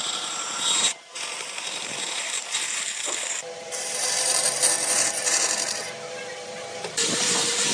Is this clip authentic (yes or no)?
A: no